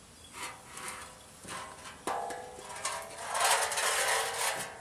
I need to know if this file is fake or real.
real